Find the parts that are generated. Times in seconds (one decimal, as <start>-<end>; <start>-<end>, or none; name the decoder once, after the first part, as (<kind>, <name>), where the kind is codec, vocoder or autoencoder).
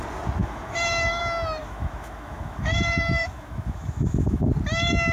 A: 0.4-1.2 (autoencoder, DAC-VAE); 1.6-4.5